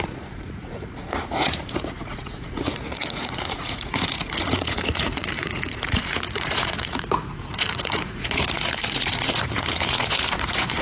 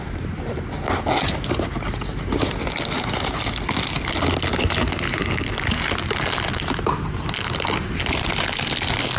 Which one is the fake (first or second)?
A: first